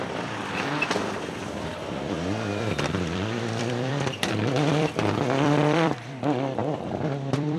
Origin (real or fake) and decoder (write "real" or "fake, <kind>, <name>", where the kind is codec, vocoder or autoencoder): fake, vocoder, BigVGAN v2